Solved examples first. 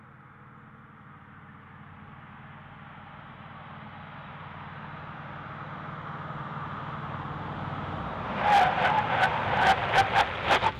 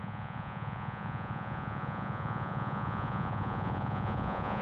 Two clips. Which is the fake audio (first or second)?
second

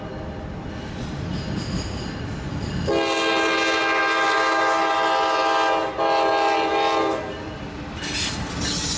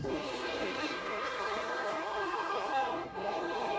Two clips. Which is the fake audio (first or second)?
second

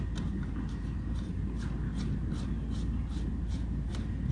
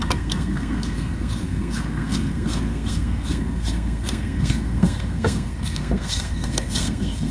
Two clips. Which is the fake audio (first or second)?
second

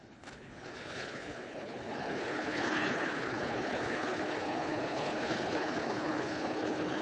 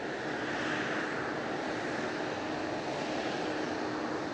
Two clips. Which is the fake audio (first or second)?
first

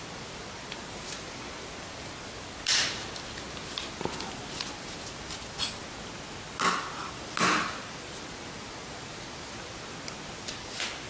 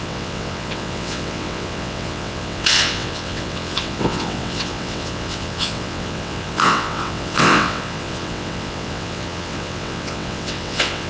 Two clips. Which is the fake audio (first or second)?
second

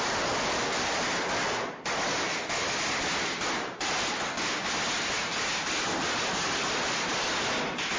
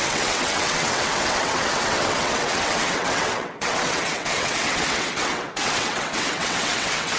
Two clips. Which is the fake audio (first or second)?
second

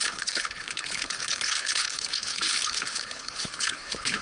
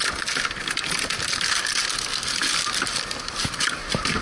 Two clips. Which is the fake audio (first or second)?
first